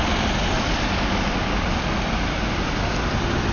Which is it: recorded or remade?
recorded